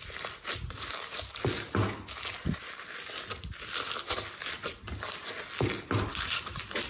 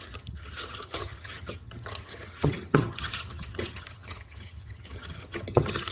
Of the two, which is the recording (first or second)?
first